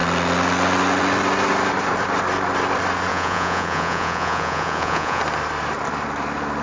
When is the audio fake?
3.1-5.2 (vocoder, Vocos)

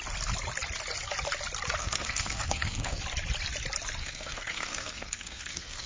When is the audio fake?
1.8-3.0 (codec, SNAC); 4.0-5.9

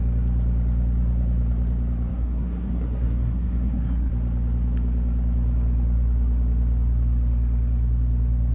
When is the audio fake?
2.1-4.1 (codec, SNAC)

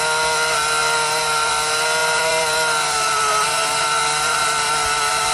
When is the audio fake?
0.8-1.5 (vocoder, BigVGAN v2); 2.0-4.4